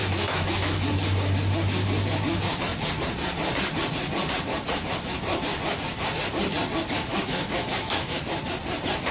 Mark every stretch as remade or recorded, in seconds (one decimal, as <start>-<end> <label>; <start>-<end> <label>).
0.0-0.9 remade; 0.9-7.1 recorded; 7.1-8.3 remade; 8.3-9.1 recorded